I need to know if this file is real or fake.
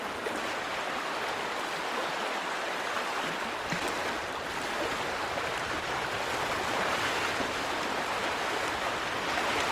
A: real